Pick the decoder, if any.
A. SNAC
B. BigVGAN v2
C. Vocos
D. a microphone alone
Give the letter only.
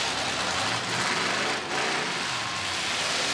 D